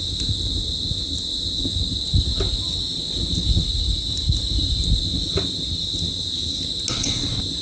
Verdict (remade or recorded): recorded